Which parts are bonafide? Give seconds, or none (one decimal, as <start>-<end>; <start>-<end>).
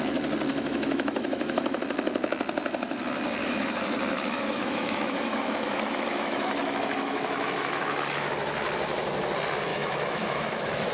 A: 0.0-0.5; 1.8-3.4; 8.3-9.7